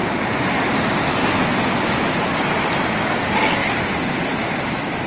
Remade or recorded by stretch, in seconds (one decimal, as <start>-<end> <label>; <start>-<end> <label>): 0.0-5.1 recorded